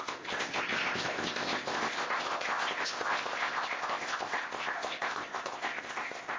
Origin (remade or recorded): remade